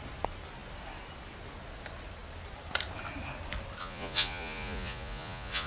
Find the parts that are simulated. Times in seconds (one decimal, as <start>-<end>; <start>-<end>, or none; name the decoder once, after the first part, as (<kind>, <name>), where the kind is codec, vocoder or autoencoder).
3.8-5.7 (vocoder, Vocos)